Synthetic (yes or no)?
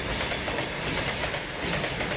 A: no